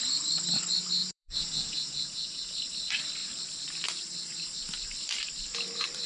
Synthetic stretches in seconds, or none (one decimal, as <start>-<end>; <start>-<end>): 1.0-2.4